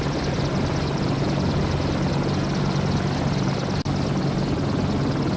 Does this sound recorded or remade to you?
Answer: recorded